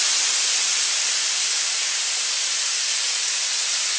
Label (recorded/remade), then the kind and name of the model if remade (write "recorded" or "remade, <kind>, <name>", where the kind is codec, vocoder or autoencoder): recorded